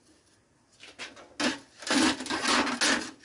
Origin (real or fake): real